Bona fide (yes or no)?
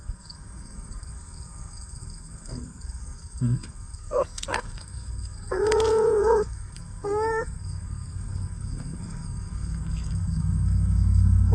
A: no